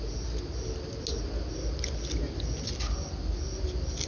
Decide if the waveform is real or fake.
real